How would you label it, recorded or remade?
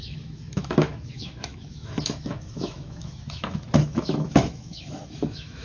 remade